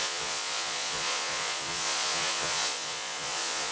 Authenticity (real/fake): fake